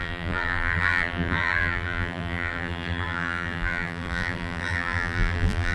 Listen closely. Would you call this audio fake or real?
fake